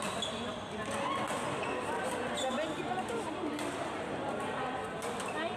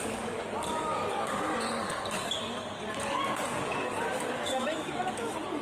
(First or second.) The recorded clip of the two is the first